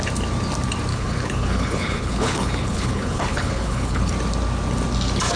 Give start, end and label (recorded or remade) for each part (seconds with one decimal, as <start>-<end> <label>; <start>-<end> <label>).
0.0-0.9 recorded; 0.9-4.1 remade; 4.1-5.4 recorded